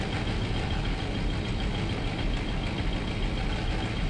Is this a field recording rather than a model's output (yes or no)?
yes